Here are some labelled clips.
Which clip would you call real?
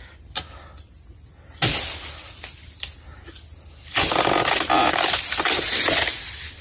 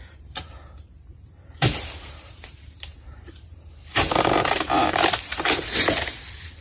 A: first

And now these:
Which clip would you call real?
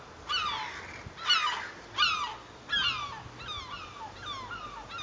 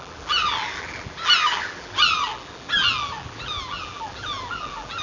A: first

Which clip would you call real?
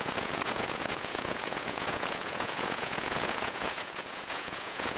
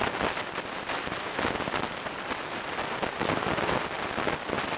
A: second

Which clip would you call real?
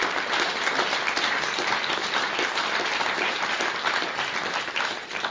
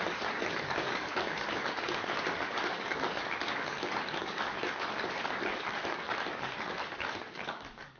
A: first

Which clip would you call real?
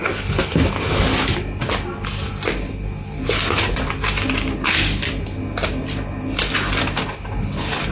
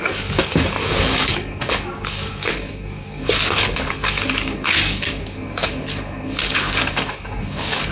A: first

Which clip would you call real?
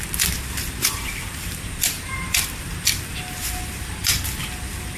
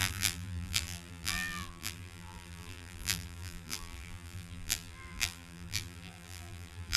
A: first